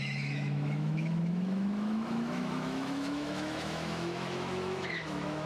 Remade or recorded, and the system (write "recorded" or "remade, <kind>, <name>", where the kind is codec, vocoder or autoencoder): remade, autoencoder, DAC-VAE